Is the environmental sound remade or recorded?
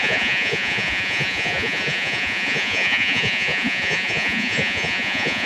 remade